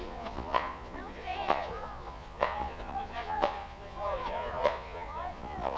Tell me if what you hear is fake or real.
fake